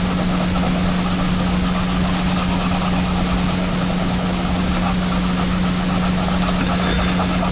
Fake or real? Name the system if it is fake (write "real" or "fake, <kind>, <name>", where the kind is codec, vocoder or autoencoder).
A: real